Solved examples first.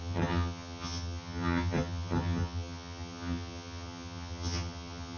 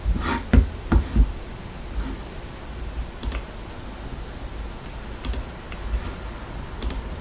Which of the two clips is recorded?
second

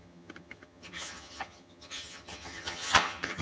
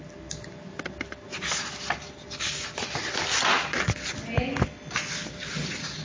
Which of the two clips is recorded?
second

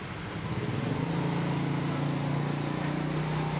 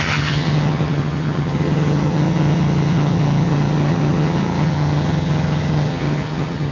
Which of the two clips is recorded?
first